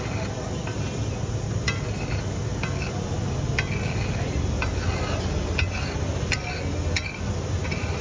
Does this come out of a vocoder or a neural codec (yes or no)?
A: no